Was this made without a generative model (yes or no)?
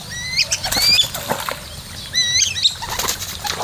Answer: yes